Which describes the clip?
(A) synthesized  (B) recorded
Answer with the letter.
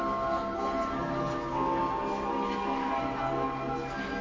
B